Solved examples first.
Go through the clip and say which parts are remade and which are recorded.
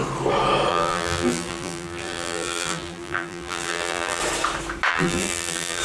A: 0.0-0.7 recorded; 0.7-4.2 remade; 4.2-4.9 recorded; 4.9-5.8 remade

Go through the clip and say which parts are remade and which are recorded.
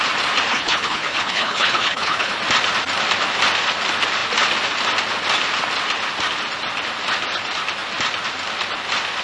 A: 0.0-0.5 recorded; 0.5-2.4 remade; 2.4-9.2 recorded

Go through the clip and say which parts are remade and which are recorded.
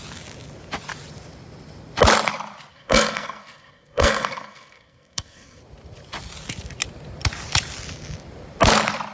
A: 0.0-2.7 recorded; 2.7-5.6 remade; 5.6-9.1 recorded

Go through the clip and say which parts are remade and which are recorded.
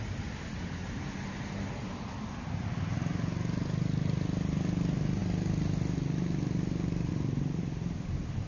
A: 0.0-8.5 recorded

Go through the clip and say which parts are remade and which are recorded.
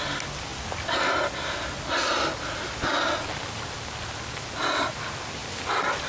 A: 0.0-6.1 recorded